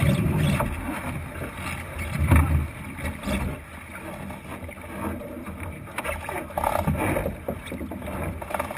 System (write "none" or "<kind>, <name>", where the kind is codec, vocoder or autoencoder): none